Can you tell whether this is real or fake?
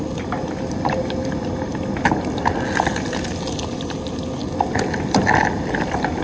real